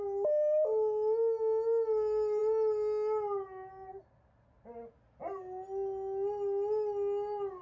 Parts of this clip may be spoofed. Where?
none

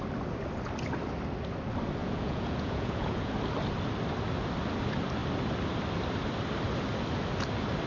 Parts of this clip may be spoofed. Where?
2.0-3.3 (vocoder, Vocos)